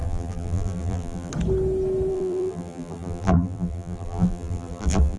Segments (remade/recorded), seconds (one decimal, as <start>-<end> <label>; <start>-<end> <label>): 0.0-1.3 remade; 1.3-2.1 recorded; 2.1-5.2 remade